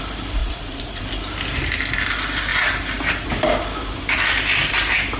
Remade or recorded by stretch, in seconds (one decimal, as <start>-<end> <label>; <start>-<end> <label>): 0.0-0.4 recorded; 0.4-1.0 remade; 1.0-5.2 recorded